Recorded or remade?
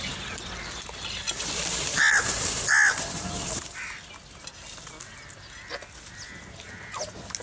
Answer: recorded